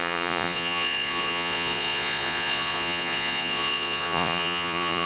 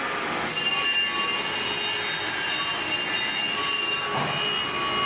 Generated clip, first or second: first